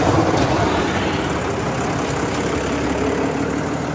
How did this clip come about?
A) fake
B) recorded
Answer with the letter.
B